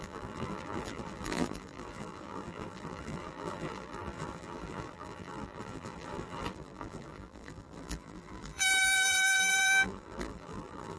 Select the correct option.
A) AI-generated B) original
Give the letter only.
A